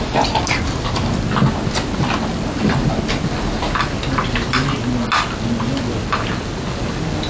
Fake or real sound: real